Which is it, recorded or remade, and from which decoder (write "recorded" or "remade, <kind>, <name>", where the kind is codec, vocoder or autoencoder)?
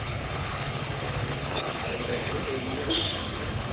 remade, codec, HILCodec